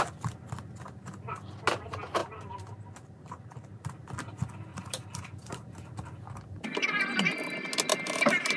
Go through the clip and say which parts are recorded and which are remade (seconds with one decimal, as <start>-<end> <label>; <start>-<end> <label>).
0.0-2.2 recorded; 2.2-3.9 remade; 3.9-4.7 recorded; 4.7-5.7 remade; 5.7-7.9 recorded; 7.9-8.6 remade